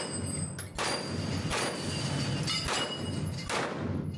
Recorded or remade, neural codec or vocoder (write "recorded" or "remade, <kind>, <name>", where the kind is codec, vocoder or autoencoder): recorded